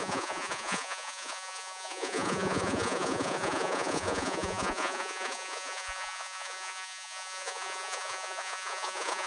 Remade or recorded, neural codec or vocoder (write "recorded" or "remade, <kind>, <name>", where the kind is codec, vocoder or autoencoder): remade, vocoder, Vocos